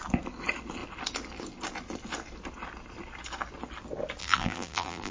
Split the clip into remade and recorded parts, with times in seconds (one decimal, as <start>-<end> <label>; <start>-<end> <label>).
0.0-4.2 recorded; 4.2-5.1 remade